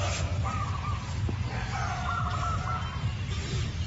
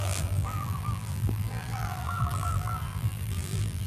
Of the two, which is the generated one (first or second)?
second